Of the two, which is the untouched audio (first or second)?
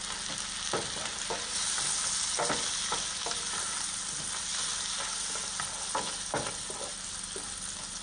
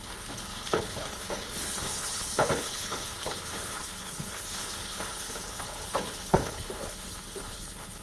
first